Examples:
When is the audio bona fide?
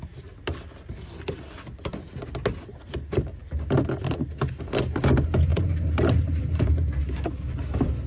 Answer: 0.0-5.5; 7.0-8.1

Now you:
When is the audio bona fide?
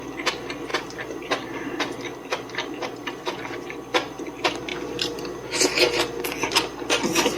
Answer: 0.0-0.7; 1.8-7.4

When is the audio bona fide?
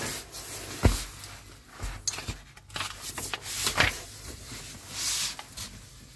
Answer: 0.0-3.7; 4.5-6.2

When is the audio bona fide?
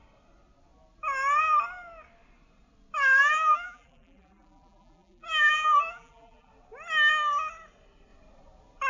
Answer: 0.0-3.2; 6.5-8.9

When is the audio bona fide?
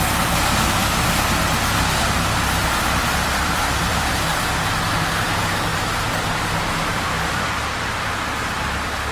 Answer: 0.0-3.0; 4.1-5.7; 8.1-9.1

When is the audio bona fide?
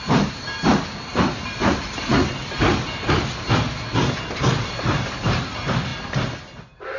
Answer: 2.1-4.5; 5.9-6.6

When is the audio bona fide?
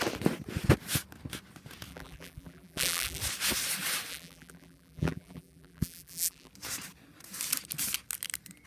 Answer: 0.0-1.9; 3.2-4.1; 6.5-8.7